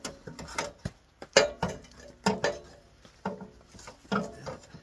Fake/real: real